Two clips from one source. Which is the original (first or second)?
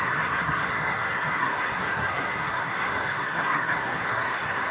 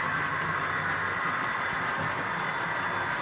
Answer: second